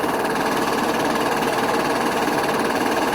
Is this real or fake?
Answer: fake